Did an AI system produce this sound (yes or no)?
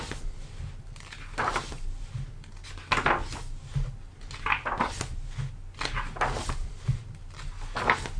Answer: no